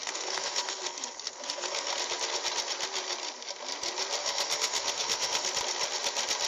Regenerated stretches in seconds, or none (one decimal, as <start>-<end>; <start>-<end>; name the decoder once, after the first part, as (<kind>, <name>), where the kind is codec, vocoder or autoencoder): 0.0-1.9 (codec, SNAC); 4.2-5.5